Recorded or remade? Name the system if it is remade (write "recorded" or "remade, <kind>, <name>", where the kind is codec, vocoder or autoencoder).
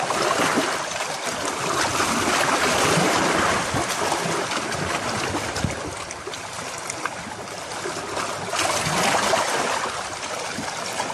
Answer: recorded